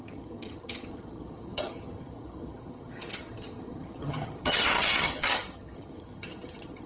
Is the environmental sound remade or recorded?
remade